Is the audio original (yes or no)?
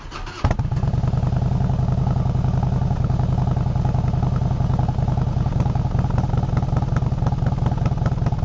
yes